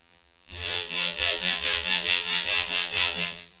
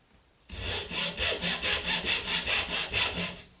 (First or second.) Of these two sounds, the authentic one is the second